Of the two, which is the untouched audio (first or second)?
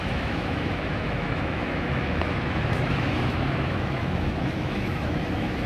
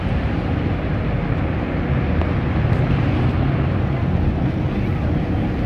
second